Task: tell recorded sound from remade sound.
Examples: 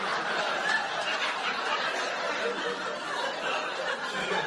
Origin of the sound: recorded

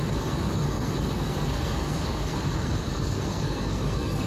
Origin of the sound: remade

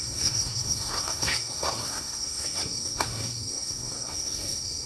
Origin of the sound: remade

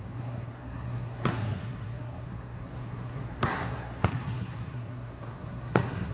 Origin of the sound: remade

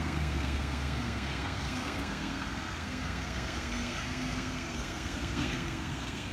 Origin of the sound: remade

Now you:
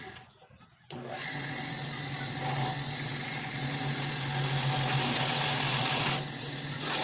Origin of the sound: recorded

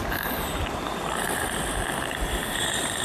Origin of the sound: recorded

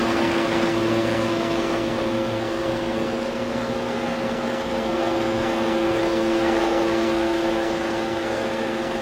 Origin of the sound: remade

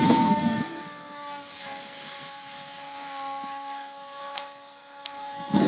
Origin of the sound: remade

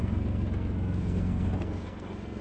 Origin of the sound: remade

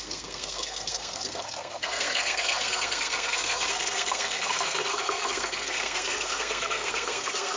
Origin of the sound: remade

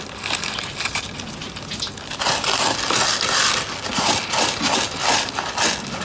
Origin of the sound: recorded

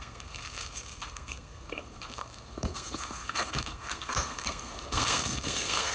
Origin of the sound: remade